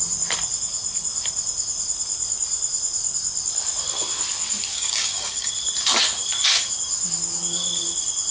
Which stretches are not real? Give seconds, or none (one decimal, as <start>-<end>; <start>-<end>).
4.7-5.5